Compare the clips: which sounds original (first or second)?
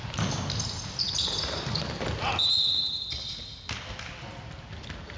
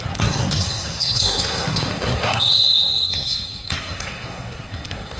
first